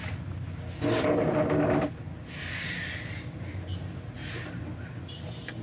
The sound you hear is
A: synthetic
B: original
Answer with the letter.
B